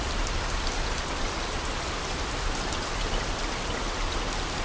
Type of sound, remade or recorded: recorded